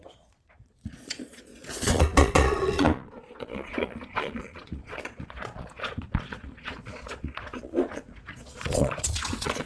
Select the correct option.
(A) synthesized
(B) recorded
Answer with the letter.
A